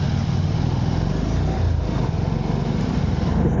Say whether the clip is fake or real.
real